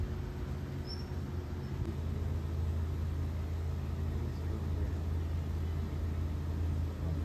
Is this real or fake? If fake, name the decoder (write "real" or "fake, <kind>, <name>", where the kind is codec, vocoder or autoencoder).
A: real